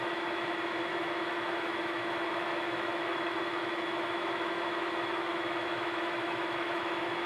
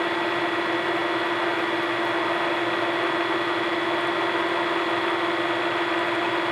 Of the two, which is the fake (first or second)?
first